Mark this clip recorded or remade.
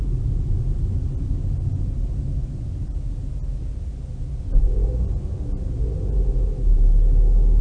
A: recorded